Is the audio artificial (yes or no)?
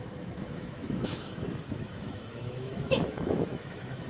yes